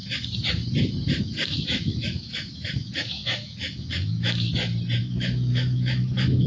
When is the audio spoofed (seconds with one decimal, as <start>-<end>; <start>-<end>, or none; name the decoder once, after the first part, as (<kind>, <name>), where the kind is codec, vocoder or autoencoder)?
1.2-4.5 (autoencoder, DAC-VAE); 5.0-6.5

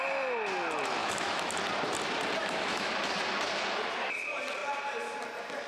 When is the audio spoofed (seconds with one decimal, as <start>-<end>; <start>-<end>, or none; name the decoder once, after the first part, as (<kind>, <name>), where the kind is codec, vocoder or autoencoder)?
1.0-1.5 (autoencoder, DAC-VAE); 2.4-2.9